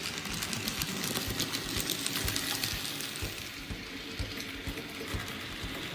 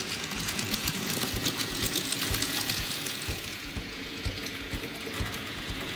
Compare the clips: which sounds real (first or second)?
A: first